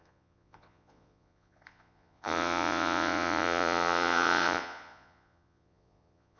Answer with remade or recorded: remade